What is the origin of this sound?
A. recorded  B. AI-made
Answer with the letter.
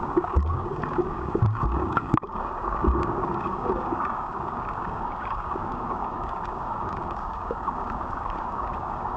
B